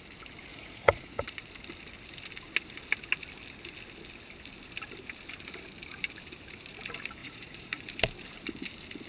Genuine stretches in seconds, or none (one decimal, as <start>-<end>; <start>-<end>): 0.0-0.5; 1.3-7.2; 7.8-9.1